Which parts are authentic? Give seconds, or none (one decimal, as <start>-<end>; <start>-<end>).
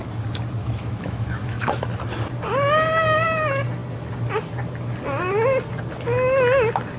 0.0-0.6; 1.8-7.0